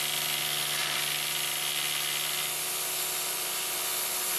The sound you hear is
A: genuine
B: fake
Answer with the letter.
A